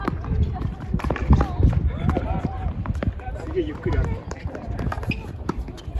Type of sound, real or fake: fake